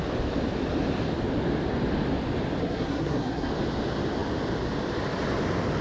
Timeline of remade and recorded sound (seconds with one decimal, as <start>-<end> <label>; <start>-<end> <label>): 0.0-2.6 recorded; 2.6-3.5 remade; 3.5-5.8 recorded